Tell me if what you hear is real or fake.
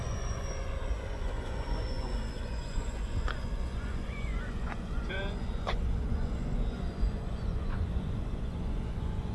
fake